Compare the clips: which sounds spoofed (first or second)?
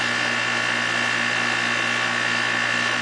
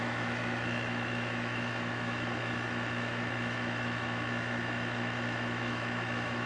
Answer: second